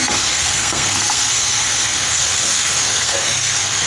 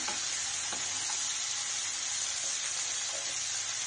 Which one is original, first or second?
second